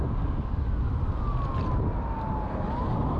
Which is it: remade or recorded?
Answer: recorded